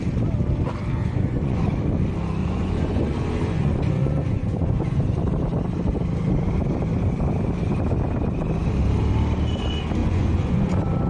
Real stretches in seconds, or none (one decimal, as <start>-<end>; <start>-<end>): 0.0-1.0; 1.6-2.4; 5.2-10.0; 10.7-11.1